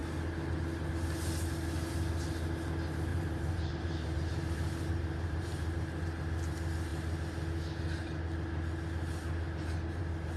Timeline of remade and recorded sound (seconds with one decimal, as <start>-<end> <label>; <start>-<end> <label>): 0.0-3.1 recorded; 3.1-6.1 remade; 6.1-10.4 recorded

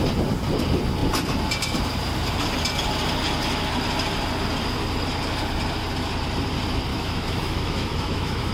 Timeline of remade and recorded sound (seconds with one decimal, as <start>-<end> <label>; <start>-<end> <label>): 0.0-6.9 recorded; 6.9-8.5 remade

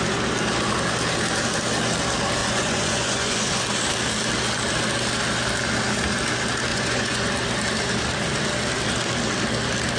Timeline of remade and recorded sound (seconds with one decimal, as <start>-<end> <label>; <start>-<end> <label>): 0.0-2.4 recorded; 2.4-3.6 remade; 3.6-6.7 recorded; 6.7-7.3 remade; 7.3-10.0 recorded